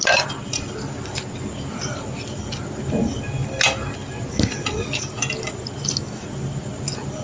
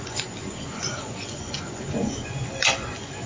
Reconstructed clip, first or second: second